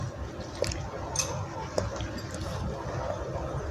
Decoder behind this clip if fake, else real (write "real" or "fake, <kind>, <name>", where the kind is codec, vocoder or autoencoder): real